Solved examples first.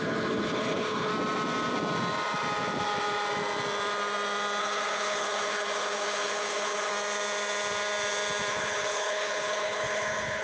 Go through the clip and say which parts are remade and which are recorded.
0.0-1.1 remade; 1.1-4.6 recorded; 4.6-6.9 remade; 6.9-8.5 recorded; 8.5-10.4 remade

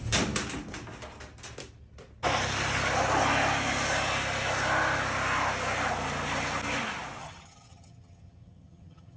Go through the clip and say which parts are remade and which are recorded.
0.0-7.2 recorded; 7.2-9.2 remade

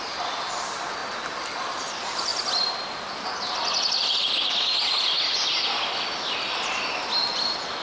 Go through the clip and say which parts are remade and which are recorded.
0.0-1.0 remade; 1.0-1.9 recorded; 1.9-2.3 remade; 2.3-6.4 recorded; 6.4-7.8 remade

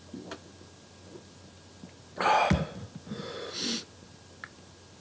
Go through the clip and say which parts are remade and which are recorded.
0.0-5.0 recorded

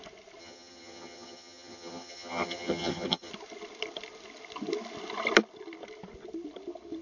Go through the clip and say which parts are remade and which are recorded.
0.0-0.4 recorded; 0.4-3.3 remade; 3.3-7.0 recorded